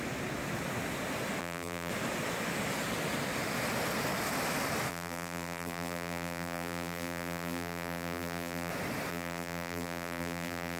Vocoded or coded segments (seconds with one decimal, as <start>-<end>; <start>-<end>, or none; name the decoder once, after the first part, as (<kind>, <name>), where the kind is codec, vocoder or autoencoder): 1.4-1.9 (vocoder, BigVGAN v2); 4.9-8.7; 9.1-10.8